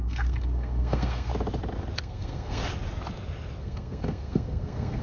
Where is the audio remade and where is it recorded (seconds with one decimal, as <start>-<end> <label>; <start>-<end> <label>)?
0.0-1.3 remade; 1.3-2.0 recorded; 2.0-2.6 remade; 2.6-3.6 recorded; 3.6-5.0 remade